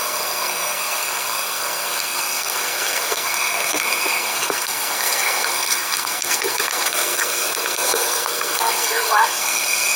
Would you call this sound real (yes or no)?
no